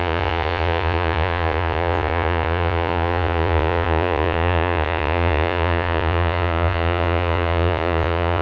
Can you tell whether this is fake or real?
fake